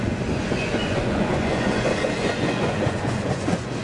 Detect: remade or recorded remade